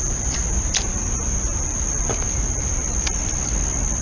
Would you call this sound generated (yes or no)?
no